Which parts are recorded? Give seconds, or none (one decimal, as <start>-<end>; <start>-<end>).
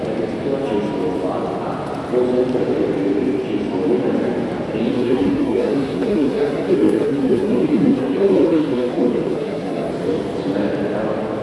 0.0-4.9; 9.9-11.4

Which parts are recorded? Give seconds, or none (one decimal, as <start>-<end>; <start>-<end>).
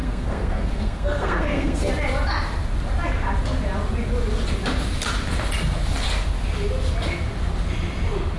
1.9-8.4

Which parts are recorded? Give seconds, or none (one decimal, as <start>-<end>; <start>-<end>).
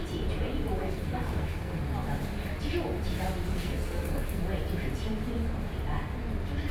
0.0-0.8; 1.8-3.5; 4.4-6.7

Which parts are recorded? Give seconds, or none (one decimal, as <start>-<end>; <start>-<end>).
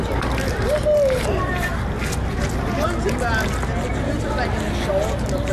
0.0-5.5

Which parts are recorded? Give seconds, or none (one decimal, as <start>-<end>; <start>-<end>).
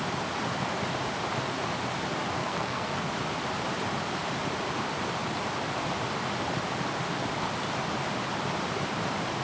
0.0-2.4; 3.1-9.4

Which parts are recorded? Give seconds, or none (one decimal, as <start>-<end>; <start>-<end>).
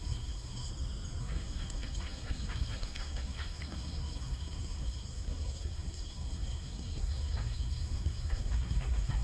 0.7-1.2